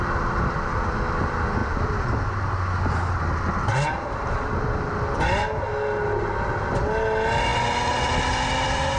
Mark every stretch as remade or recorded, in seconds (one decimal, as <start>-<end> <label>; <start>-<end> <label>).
0.0-9.0 recorded